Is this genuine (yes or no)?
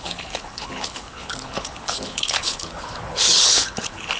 no